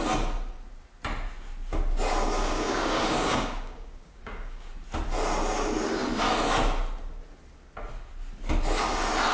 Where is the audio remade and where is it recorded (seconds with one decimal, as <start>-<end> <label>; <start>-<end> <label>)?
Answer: 0.0-2.4 recorded; 2.4-4.7 remade; 4.7-9.3 recorded